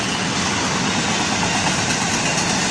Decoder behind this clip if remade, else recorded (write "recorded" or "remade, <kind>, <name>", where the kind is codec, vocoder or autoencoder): recorded